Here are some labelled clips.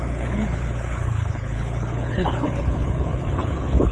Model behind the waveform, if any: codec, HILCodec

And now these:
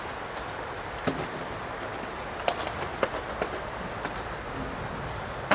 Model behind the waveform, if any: none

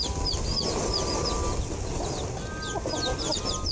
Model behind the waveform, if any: none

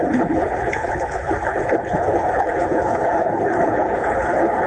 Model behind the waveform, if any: codec, HILCodec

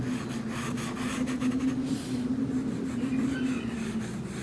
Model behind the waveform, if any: none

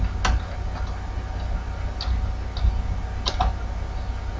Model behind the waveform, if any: none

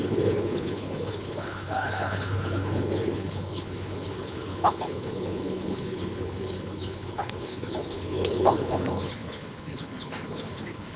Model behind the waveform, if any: codec, HILCodec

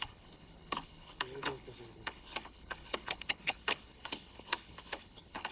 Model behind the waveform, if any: codec, HILCodec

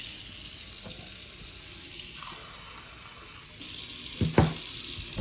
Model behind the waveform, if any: none